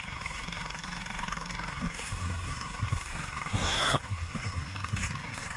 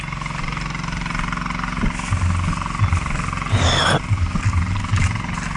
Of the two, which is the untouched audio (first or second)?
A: second